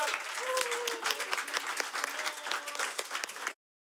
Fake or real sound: real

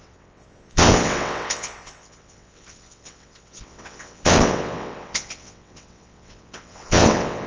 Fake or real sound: fake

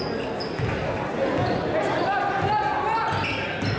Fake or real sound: real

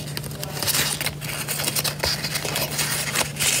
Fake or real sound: real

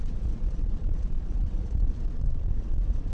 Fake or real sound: fake